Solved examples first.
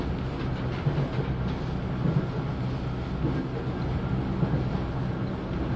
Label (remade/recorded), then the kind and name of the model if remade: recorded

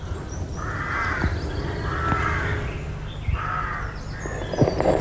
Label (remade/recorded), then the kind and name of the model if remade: recorded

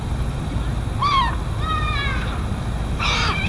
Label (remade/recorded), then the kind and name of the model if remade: remade, vocoder, BigVGAN v2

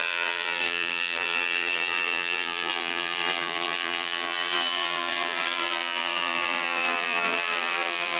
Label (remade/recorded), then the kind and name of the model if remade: remade, vocoder, BigVGAN v2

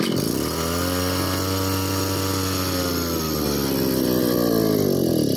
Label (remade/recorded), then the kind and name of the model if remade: recorded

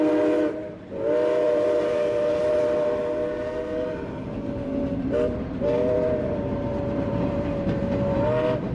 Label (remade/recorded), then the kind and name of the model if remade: recorded